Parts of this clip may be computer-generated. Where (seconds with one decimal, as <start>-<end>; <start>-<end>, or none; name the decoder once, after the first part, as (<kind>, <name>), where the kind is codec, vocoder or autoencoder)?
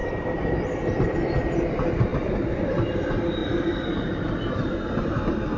0.0-1.4 (vocoder, BigVGAN v2); 3.4-4.7